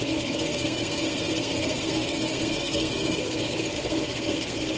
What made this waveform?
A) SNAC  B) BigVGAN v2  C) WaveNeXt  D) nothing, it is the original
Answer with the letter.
A